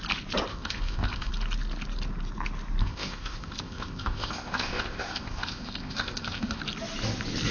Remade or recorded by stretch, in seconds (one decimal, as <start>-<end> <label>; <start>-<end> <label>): 0.0-0.5 recorded; 0.5-1.3 remade; 1.3-2.8 recorded; 2.8-6.6 remade; 6.6-7.5 recorded